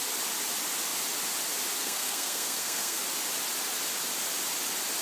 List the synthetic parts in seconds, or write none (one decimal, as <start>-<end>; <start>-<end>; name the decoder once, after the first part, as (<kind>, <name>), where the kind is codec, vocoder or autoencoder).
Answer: 1.8-3.0 (codec, SNAC)